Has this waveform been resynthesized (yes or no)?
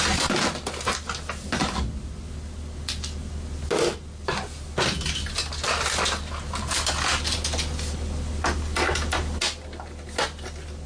no